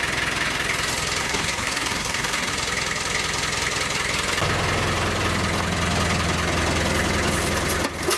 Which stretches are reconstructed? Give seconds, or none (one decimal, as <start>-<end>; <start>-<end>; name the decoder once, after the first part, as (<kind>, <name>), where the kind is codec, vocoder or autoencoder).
1.2-2.5 (codec, SNAC)